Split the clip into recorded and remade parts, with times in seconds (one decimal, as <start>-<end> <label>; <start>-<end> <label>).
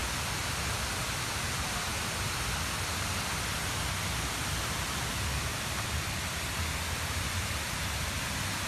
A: 0.0-1.4 remade; 1.4-5.5 recorded; 5.5-7.8 remade; 7.8-8.7 recorded